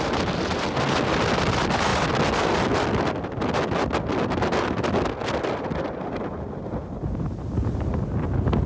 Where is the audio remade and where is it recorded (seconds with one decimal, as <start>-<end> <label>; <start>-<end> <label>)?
0.0-8.7 recorded